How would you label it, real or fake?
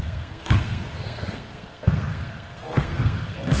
fake